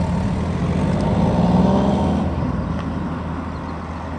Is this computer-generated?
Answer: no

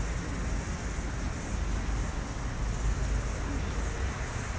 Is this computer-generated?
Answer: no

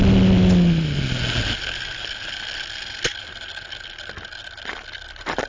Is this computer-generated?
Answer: no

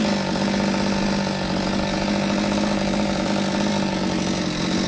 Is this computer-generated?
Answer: no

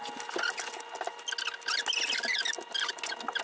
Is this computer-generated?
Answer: no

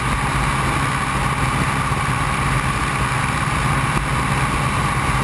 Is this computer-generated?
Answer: no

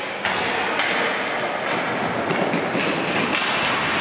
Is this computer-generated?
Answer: no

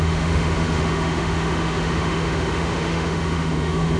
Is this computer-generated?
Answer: yes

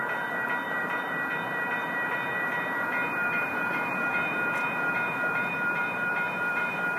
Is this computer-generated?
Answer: yes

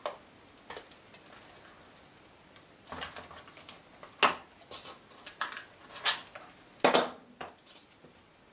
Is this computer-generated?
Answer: no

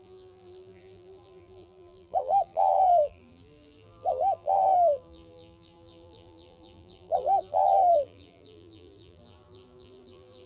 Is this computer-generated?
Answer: yes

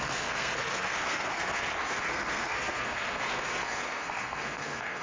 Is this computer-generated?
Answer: yes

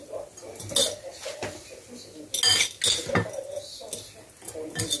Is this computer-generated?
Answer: no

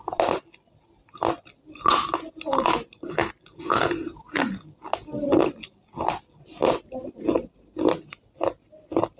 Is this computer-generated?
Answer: no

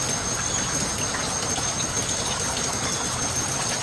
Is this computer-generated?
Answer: no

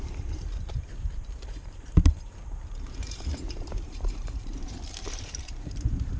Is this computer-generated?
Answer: yes